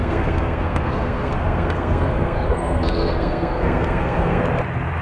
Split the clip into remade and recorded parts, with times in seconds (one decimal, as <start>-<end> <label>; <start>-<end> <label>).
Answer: 0.0-4.4 remade; 4.4-5.0 recorded